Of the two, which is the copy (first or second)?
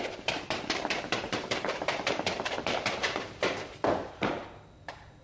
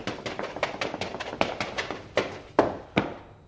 first